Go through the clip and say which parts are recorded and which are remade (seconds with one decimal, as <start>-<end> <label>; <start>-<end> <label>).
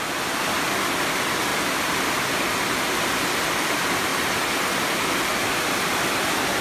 0.0-1.5 recorded; 1.5-2.1 remade; 2.1-6.6 recorded